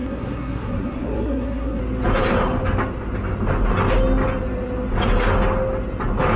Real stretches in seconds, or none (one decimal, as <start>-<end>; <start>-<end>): 1.8-6.4